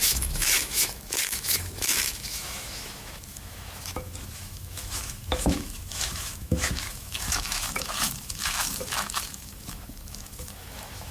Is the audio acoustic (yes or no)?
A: no